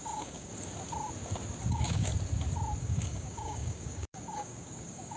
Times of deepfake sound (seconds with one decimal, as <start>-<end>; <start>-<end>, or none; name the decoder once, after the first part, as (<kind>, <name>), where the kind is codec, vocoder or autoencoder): 0.0-0.5 (codec, DAC); 1.7-2.1; 2.8-5.2